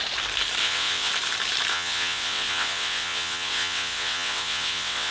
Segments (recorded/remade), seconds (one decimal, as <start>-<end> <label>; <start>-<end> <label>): 0.0-0.6 recorded; 0.6-1.1 remade; 1.1-1.7 recorded; 1.7-5.1 remade